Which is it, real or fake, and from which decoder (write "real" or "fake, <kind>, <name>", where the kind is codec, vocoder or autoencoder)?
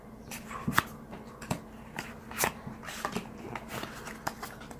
real